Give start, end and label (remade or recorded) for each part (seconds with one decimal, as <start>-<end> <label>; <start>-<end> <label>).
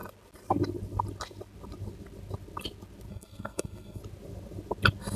0.0-3.1 recorded; 3.1-4.0 remade; 4.0-5.2 recorded